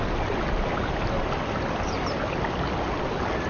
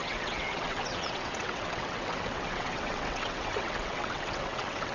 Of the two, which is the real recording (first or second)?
first